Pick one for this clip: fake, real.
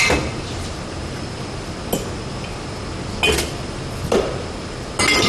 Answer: real